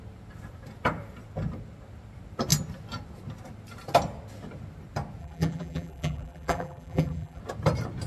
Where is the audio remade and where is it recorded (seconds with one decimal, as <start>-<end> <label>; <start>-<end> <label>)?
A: 0.0-5.2 recorded; 5.2-7.4 remade; 7.4-8.1 recorded

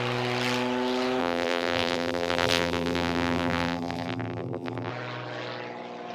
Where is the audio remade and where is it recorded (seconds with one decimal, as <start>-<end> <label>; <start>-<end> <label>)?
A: 0.0-1.2 recorded; 1.2-4.9 remade; 4.9-6.1 recorded

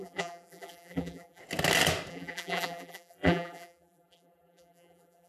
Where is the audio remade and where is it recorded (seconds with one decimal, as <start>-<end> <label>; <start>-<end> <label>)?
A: 0.0-1.4 remade; 1.4-2.1 recorded; 2.1-5.3 remade